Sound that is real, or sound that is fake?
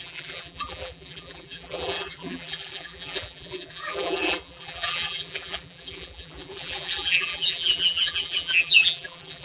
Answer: fake